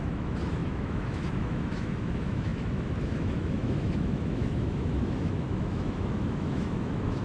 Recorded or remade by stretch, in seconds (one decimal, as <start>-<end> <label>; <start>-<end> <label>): 0.0-7.2 remade